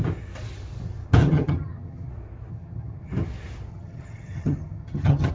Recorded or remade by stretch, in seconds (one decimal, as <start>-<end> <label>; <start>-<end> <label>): 0.0-1.2 recorded; 1.2-2.1 remade; 2.1-2.5 recorded; 2.5-3.1 remade; 3.1-3.7 recorded; 3.7-5.3 remade